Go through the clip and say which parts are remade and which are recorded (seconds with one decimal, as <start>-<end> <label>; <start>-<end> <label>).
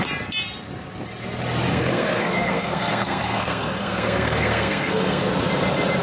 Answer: 0.0-1.7 recorded; 1.7-5.3 remade; 5.3-6.0 recorded